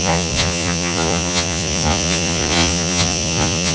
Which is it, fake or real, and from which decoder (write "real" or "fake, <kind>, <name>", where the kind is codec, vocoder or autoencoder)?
fake, vocoder, Vocos